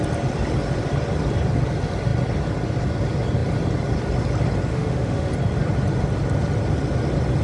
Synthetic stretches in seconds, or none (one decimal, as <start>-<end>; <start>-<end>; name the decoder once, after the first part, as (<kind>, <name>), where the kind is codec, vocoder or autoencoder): 4.7-5.3 (autoencoder, DAC-VAE)